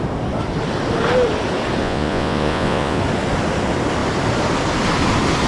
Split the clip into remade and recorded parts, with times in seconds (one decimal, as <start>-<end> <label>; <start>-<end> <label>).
0.0-1.8 recorded; 1.8-3.0 remade; 3.0-5.5 recorded